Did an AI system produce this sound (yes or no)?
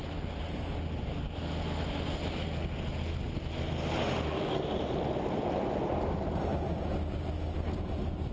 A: no